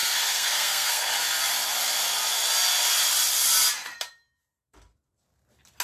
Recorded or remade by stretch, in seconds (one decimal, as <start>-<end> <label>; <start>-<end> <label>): 0.0-1.1 remade; 1.1-5.8 recorded